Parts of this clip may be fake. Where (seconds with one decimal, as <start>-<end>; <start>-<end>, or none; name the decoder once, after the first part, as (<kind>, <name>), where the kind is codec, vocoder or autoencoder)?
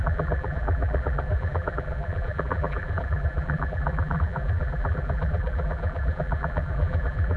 0.0-7.4 (vocoder, BigVGAN v2)